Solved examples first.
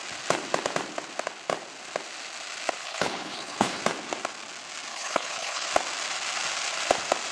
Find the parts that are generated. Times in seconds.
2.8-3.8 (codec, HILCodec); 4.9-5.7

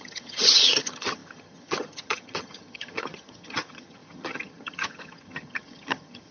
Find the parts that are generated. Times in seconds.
0.0-6.3 (vocoder, HiFi-GAN)

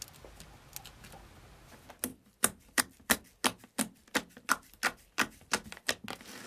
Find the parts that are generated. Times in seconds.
2.1-2.8 (vocoder, BigVGAN v2)